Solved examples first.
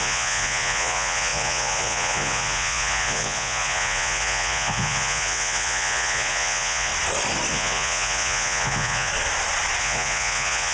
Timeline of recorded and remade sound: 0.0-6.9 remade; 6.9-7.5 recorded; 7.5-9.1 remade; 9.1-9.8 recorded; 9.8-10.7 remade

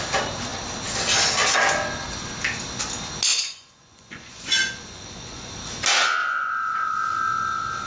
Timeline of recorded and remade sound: 0.0-3.3 recorded; 3.3-5.5 remade; 5.5-6.2 recorded; 6.2-7.0 remade; 7.0-7.9 recorded

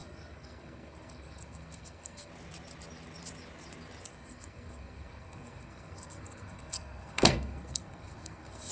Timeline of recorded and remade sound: 0.0-2.3 remade; 2.3-4.1 recorded; 4.1-8.7 remade

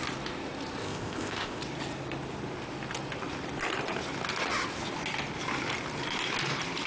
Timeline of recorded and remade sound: 0.0-0.8 recorded; 0.8-1.6 remade; 1.6-6.9 recorded

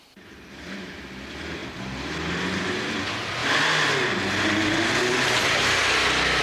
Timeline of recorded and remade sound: 0.0-6.4 recorded